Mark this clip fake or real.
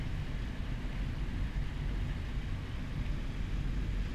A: real